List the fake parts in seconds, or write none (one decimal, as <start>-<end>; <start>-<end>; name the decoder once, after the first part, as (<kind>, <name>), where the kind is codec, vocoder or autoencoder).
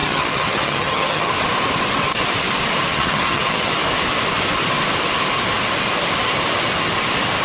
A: 0.0-1.3 (vocoder, HiFi-GAN); 2.9-3.7